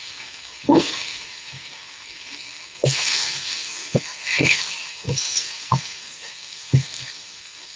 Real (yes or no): no